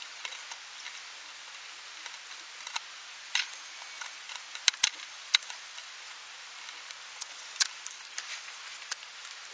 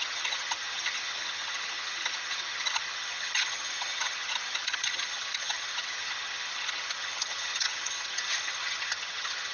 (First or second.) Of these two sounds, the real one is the first